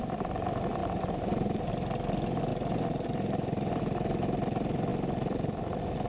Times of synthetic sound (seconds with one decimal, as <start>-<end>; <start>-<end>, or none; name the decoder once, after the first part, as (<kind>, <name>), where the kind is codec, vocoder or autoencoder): 0.8-1.7 (vocoder, BigVGAN v2); 2.5-3.8